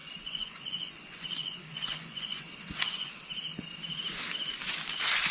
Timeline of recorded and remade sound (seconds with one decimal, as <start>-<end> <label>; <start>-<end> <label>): 0.0-3.2 remade; 3.2-5.3 recorded